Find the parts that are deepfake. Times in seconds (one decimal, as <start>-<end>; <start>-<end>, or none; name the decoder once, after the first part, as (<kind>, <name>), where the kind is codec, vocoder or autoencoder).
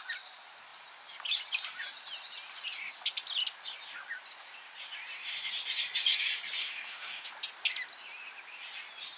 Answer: 6.6-7.3 (autoencoder, DAC-VAE)